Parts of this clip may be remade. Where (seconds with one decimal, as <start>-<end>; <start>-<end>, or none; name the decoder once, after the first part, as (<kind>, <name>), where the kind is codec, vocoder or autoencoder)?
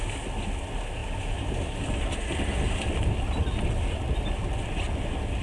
none